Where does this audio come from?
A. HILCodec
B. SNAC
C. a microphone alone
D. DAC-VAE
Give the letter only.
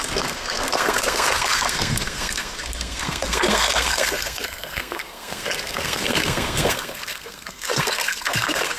B